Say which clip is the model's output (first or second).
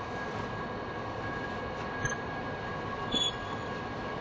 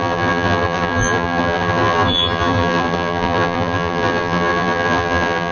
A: second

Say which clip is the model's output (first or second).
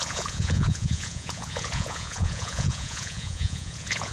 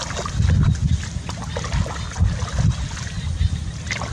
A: first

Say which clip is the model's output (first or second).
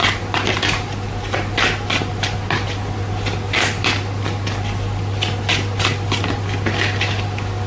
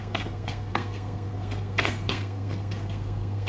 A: second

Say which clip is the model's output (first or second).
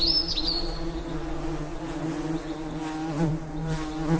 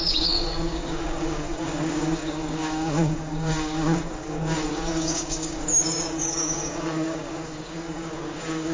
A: second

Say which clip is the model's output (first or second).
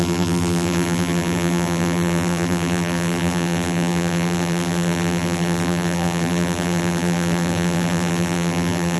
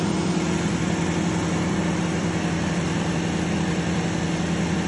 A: first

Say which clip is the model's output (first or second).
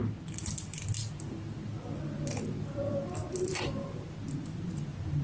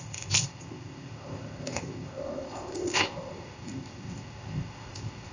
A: second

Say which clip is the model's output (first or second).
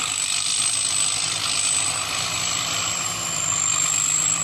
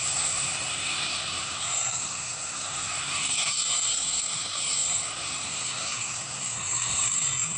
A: second